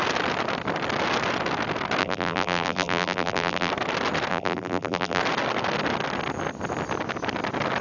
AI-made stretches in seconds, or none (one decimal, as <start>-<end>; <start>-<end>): 2.0-3.7; 4.3-5.2